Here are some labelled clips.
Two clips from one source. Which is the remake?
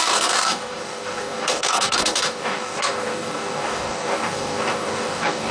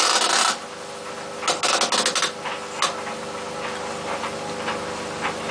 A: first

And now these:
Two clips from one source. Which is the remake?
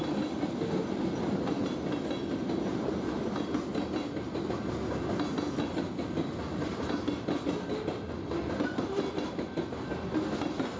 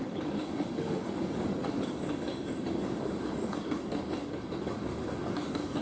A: second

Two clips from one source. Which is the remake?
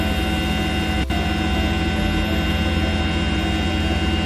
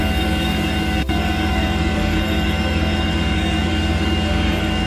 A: second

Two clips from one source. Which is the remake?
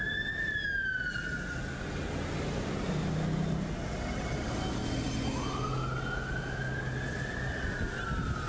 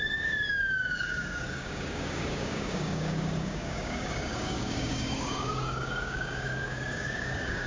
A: second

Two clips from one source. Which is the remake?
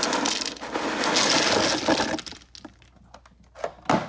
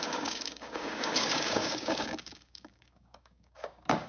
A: second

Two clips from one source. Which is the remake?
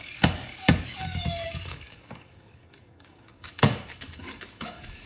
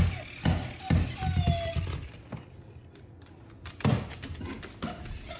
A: first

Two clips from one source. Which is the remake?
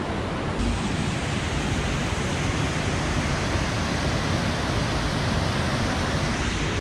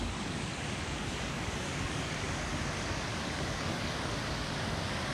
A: second